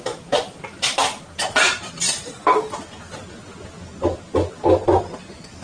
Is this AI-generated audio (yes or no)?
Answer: no